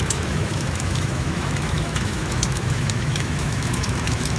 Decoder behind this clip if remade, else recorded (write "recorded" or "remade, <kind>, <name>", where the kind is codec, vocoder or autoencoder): remade, autoencoder, DAC-VAE